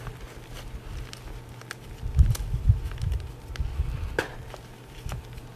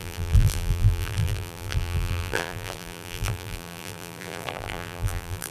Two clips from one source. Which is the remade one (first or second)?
second